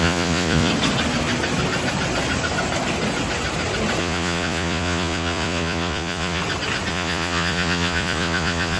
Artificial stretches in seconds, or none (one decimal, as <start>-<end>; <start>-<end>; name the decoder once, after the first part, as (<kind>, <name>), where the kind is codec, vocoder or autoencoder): 0.0-0.7 (vocoder, Vocos); 4.0-6.4; 6.9-8.8